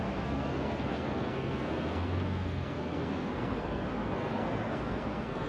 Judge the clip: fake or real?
fake